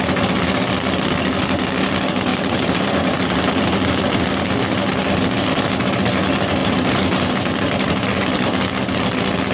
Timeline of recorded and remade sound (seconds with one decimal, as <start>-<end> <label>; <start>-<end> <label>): 0.0-2.3 recorded; 2.3-4.0 remade; 4.0-6.6 recorded; 6.6-7.9 remade; 7.9-9.5 recorded